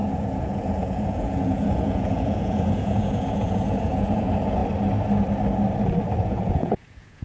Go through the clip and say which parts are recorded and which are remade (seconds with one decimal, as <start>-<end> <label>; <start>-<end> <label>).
0.0-4.6 remade; 4.6-6.2 recorded; 6.2-7.2 remade